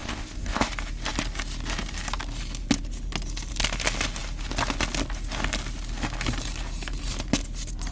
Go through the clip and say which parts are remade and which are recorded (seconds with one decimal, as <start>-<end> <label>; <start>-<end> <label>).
0.0-0.7 remade; 0.7-7.9 recorded